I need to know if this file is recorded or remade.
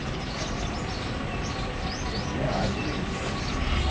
recorded